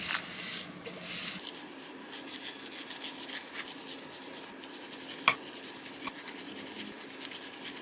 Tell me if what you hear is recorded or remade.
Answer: recorded